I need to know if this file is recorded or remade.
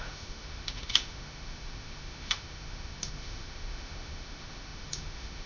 remade